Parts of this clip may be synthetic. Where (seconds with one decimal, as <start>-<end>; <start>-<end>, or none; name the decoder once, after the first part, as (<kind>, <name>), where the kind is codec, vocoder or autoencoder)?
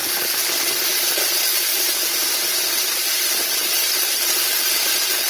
1.7-4.4 (vocoder, BigVGAN v2)